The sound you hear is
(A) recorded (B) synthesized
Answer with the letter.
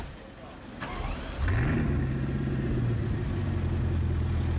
A